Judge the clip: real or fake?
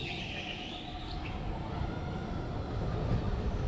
real